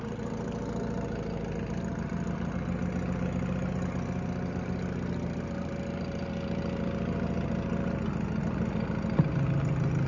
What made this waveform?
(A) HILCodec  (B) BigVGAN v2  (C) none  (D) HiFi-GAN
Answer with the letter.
C